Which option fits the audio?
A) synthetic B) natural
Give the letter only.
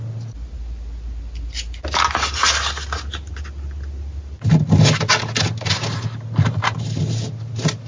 B